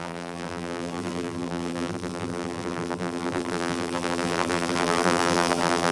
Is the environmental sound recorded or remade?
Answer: remade